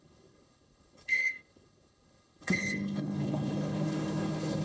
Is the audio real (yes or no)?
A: no